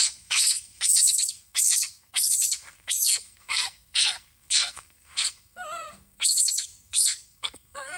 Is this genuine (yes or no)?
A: no